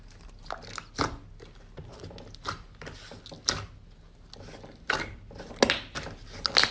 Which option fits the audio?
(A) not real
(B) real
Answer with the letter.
B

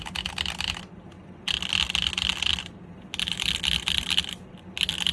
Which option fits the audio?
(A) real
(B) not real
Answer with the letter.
A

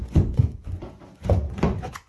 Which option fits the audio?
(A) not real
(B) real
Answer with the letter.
A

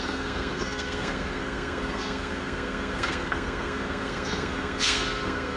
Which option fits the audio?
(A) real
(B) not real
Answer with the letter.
B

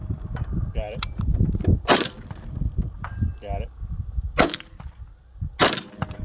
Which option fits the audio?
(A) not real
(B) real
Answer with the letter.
B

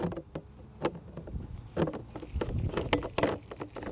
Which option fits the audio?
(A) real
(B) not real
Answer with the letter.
A